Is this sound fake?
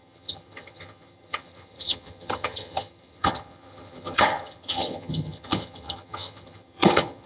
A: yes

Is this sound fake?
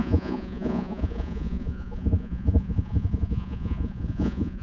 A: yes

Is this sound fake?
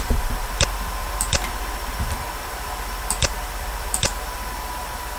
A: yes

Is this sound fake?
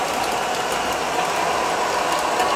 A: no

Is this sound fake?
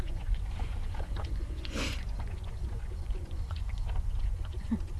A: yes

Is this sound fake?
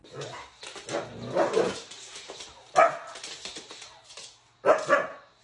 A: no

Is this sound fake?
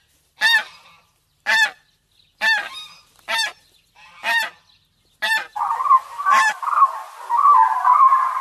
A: no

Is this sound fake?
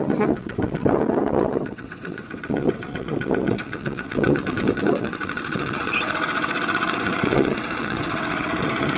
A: yes